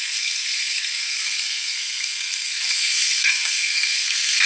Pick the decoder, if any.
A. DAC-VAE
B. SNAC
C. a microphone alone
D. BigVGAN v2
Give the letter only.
B